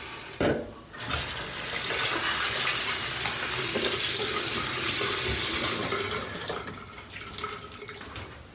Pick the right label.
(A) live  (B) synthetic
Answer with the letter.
A